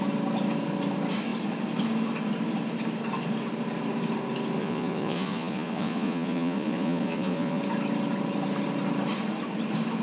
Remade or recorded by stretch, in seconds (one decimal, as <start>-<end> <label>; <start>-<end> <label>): 0.0-4.6 recorded; 4.6-7.6 remade; 7.6-10.0 recorded

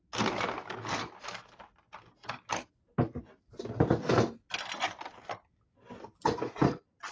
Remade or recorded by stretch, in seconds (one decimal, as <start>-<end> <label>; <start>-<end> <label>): 0.0-7.1 recorded